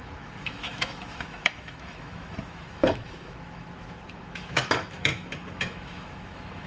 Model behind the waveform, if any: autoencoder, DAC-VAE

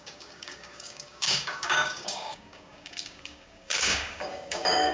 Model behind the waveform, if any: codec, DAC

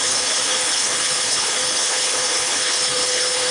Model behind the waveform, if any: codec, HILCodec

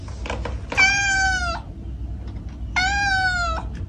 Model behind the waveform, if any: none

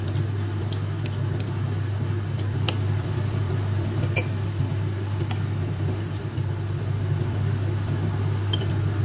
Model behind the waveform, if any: none